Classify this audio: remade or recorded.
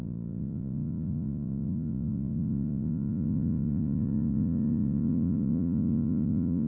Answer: remade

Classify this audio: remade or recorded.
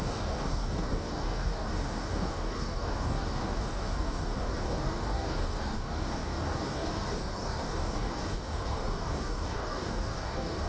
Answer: remade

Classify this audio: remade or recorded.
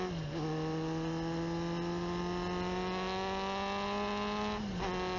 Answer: recorded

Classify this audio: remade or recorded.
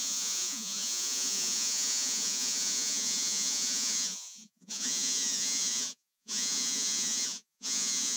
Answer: remade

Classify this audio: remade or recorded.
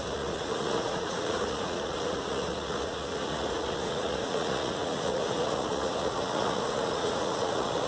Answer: remade